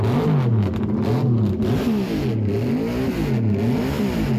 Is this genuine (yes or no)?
yes